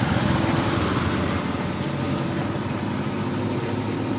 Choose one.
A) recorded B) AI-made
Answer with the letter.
A